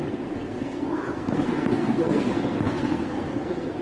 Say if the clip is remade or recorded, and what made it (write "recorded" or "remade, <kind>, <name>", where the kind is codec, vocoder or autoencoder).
remade, codec, SNAC